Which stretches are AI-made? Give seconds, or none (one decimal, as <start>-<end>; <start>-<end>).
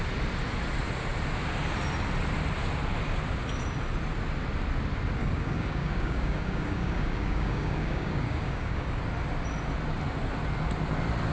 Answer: 5.2-9.0